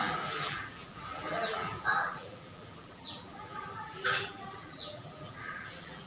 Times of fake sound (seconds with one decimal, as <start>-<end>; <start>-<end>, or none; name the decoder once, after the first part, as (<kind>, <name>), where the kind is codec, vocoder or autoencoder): 0.0-6.1 (vocoder, BigVGAN v2)